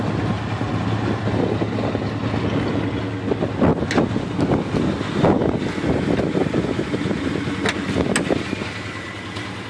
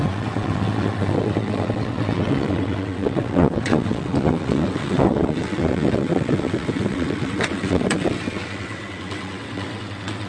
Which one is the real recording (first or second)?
first